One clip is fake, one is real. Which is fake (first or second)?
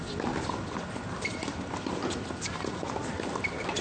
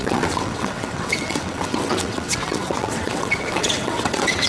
second